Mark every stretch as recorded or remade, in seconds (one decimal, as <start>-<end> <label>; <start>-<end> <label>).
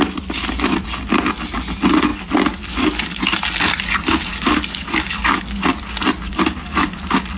0.0-2.1 recorded; 2.1-3.2 remade; 3.2-4.3 recorded; 4.3-5.6 remade; 5.6-6.3 recorded; 6.3-7.0 remade; 7.0-7.4 recorded